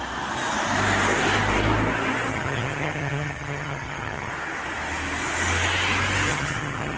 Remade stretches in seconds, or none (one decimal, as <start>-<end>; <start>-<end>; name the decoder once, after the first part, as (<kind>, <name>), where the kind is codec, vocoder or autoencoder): 2.3-4.3 (vocoder, HiFi-GAN); 6.3-7.0